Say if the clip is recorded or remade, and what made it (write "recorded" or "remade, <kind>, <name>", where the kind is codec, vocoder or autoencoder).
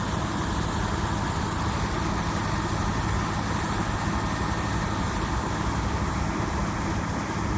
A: recorded